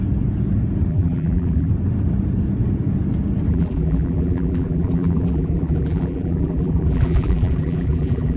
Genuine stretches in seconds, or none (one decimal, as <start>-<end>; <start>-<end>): 0.0-0.9; 1.7-3.5